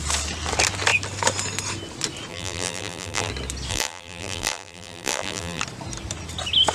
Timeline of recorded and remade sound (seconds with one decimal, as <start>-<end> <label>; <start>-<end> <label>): 0.0-2.3 recorded; 2.3-3.3 remade; 3.3-3.7 recorded; 3.7-5.6 remade; 5.6-6.7 recorded